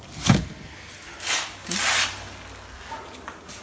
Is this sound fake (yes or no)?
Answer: no